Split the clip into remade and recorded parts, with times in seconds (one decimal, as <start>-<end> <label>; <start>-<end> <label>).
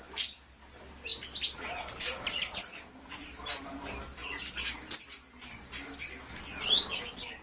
0.0-7.4 recorded